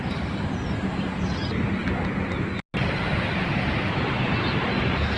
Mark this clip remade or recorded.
recorded